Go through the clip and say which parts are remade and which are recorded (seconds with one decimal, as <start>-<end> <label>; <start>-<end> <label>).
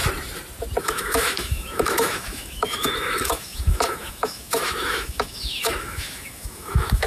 0.0-0.8 recorded; 0.8-7.1 remade